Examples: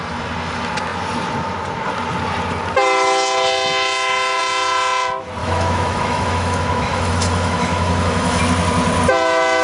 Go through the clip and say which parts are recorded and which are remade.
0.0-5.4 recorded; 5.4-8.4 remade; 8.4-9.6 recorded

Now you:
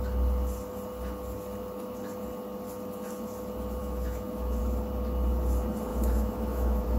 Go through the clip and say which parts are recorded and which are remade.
0.0-3.8 recorded; 3.8-4.6 remade; 4.6-5.9 recorded; 5.9-7.0 remade

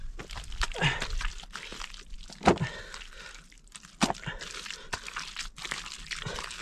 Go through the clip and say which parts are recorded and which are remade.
0.0-6.6 recorded

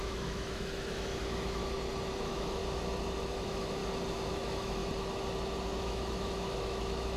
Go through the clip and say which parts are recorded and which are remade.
0.0-1.6 remade; 1.6-2.1 recorded; 2.1-2.6 remade; 2.6-3.2 recorded; 3.2-3.8 remade; 3.8-4.3 recorded; 4.3-4.8 remade; 4.8-5.8 recorded; 5.8-7.2 remade

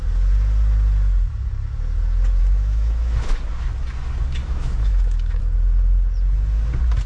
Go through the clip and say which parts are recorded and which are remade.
0.0-2.4 recorded; 2.4-3.4 remade; 3.4-4.4 recorded; 4.4-5.4 remade; 5.4-7.1 recorded

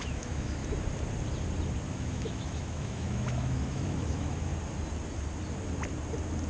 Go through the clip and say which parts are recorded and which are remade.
0.0-0.6 remade; 0.6-1.9 recorded; 1.9-4.5 remade; 4.5-6.5 recorded

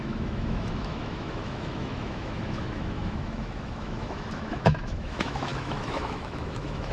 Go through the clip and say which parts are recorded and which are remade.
0.0-6.9 remade

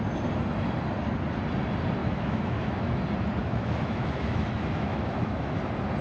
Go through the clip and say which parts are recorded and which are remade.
0.0-2.0 recorded; 2.0-3.0 remade; 3.0-3.4 recorded; 3.4-5.6 remade; 5.6-6.0 recorded